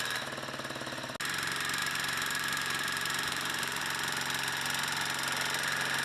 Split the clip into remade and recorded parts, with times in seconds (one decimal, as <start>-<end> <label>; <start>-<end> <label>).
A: 0.0-1.8 recorded; 1.8-3.8 remade; 3.8-6.0 recorded

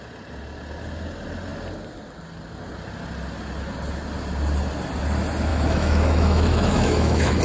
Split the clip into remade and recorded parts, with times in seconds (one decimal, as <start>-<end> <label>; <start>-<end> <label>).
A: 0.0-5.5 recorded; 5.5-7.4 remade

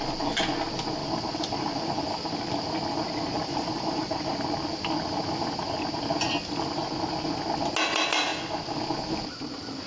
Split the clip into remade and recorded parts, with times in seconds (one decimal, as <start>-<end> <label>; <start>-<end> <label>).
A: 0.0-1.0 recorded; 1.0-1.8 remade; 1.8-3.4 recorded; 3.4-4.3 remade; 4.3-9.9 recorded